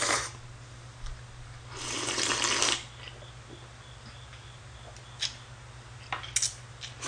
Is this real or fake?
real